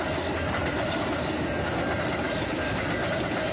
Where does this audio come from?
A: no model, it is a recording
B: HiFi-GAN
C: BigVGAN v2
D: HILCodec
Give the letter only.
A